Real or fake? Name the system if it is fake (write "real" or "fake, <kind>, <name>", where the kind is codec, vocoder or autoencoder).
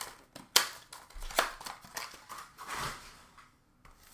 real